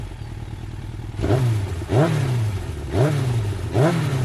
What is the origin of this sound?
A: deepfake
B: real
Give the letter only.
B